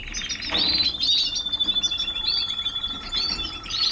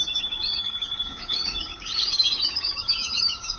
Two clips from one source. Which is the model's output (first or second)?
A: second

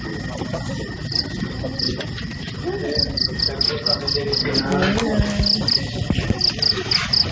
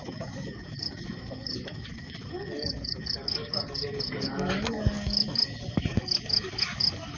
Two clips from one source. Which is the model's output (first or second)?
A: second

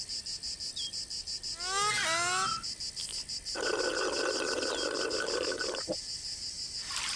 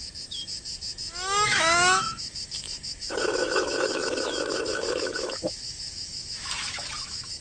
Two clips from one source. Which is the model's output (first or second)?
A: second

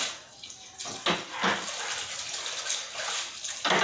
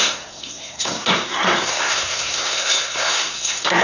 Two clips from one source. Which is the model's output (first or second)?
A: second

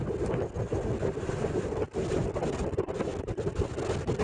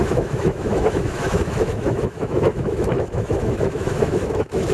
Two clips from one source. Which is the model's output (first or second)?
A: second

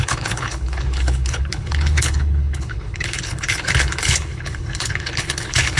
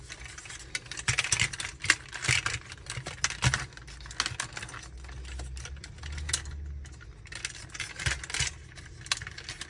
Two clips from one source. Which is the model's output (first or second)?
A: first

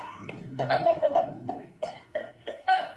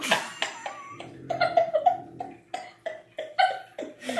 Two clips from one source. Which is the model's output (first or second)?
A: first